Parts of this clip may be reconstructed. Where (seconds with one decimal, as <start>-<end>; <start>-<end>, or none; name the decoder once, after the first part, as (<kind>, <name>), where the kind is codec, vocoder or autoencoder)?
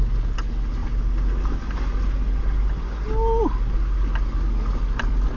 none